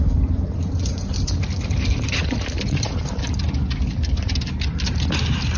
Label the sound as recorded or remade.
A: recorded